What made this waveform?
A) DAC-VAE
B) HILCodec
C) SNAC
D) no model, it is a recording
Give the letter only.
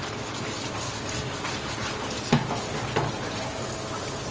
D